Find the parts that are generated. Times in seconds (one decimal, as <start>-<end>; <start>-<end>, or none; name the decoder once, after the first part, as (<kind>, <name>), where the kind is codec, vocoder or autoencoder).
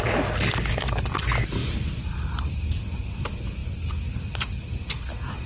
none